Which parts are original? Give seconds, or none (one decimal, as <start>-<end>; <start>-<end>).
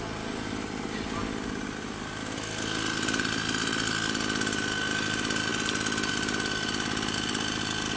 0.0-8.0